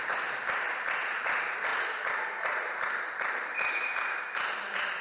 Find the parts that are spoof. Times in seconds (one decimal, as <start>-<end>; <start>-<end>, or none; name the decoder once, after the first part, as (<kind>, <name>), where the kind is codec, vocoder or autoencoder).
none

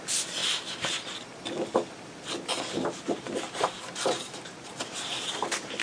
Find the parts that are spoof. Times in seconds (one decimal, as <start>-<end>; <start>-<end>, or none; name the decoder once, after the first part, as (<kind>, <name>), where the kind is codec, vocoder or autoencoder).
none

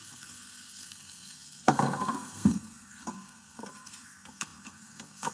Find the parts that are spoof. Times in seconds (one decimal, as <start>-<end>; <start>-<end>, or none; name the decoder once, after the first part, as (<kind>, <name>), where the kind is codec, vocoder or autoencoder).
0.0-5.3 (codec, SNAC)

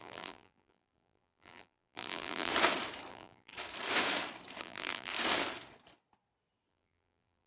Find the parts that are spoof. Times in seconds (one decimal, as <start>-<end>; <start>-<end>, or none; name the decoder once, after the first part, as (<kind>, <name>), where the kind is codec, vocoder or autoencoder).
0.0-2.5 (vocoder, BigVGAN v2); 3.1-3.5; 4.6-5.1; 6.7-7.5

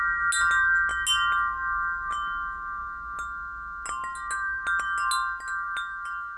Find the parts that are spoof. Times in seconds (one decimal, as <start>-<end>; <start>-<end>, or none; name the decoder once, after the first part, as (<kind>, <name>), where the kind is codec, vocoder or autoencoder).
none

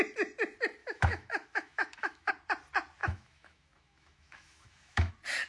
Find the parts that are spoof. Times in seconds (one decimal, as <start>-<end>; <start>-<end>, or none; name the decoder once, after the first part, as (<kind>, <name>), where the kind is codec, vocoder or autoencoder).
0.8-2.3 (autoencoder, DAC-VAE); 3.0-5.1

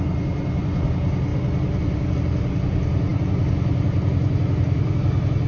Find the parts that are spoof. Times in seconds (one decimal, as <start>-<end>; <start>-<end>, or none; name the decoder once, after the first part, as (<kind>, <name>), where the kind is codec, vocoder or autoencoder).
none

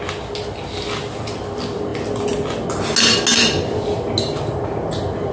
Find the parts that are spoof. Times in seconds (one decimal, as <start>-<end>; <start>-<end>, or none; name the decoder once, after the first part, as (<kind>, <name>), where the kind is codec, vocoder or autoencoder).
none